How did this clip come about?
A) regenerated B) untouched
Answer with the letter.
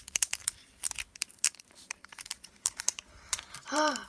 A